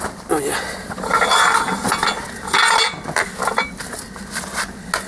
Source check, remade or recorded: recorded